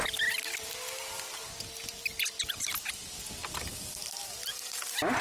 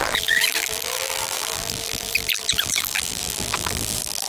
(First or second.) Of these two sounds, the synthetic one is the second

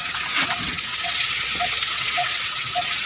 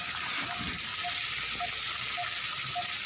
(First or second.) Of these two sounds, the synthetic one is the first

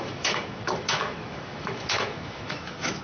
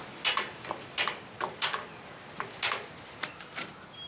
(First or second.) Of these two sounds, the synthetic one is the first